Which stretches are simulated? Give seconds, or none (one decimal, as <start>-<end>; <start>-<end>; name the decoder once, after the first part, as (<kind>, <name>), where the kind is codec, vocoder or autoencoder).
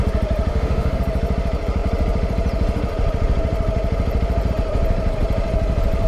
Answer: 0.5-1.0 (autoencoder, DAC-VAE)